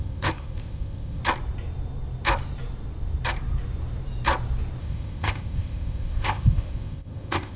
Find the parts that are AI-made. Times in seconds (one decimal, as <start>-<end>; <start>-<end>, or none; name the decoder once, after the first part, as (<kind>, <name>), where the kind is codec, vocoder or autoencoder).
0.0-1.2 (codec, ZipCodec); 4.8-7.6